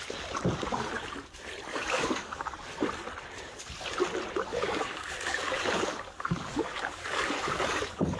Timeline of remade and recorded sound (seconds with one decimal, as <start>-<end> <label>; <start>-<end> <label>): 0.0-1.7 recorded; 1.7-2.5 remade; 2.5-4.5 recorded; 4.5-8.2 remade